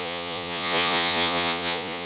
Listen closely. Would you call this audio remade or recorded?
remade